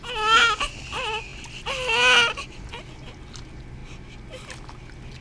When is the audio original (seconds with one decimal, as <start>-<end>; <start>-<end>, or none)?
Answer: 0.0-5.2